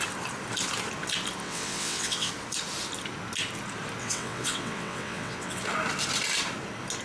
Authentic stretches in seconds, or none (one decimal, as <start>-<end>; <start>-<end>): 0.0-1.4; 2.3-4.0; 5.6-7.0